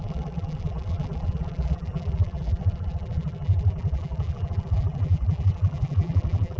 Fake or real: fake